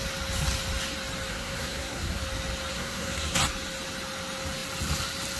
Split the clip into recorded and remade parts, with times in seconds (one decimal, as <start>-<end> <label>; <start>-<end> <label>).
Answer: 0.0-1.3 recorded; 1.3-2.2 remade; 2.2-2.7 recorded; 2.7-3.4 remade; 3.4-5.4 recorded